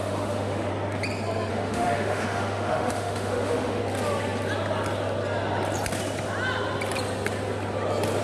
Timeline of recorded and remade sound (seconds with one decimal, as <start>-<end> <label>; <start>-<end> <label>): 0.0-0.7 remade; 0.7-1.5 recorded; 1.5-3.8 remade; 3.8-8.2 recorded